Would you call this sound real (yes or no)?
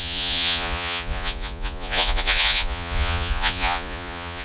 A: no